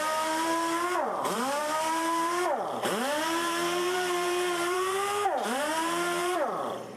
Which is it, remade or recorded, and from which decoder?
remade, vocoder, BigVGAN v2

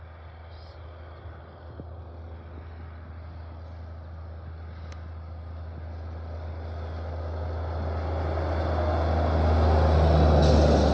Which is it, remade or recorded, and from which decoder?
recorded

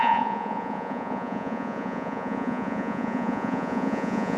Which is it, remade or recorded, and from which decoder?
remade, vocoder, Vocos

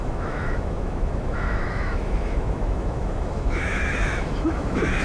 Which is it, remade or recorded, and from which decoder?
remade, autoencoder, DAC-VAE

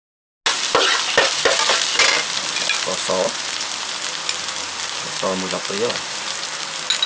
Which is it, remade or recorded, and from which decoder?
recorded